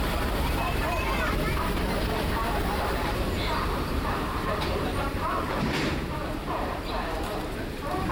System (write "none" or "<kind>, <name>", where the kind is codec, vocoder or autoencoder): vocoder, BigVGAN v2